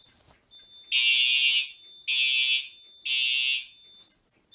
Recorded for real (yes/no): yes